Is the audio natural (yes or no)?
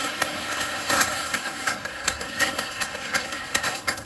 no